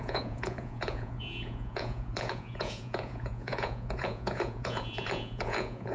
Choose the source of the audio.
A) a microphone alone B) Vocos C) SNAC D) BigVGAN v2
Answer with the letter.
B